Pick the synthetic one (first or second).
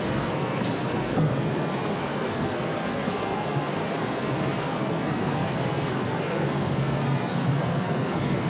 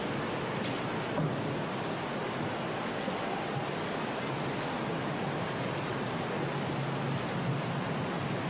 first